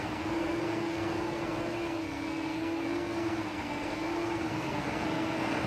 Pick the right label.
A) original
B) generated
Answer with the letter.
B